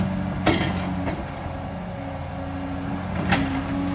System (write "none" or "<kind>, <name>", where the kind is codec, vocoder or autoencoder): none